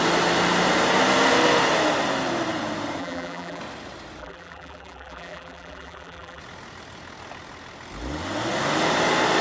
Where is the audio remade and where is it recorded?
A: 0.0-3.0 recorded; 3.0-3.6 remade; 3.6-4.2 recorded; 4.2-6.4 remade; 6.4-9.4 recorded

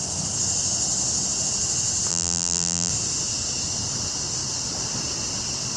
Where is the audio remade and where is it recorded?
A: 0.0-2.1 recorded; 2.1-2.9 remade; 2.9-5.8 recorded